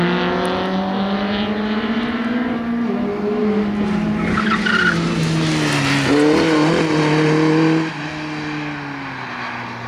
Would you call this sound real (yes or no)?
yes